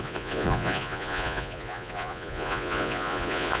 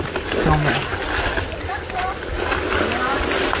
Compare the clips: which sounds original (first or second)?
second